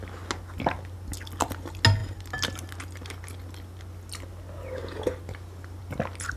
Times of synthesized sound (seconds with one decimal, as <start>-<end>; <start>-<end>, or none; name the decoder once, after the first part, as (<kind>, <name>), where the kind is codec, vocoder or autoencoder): none